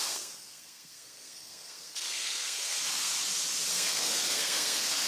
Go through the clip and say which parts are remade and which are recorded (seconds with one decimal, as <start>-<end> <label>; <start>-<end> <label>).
0.0-3.1 remade; 3.1-3.7 recorded; 3.7-5.1 remade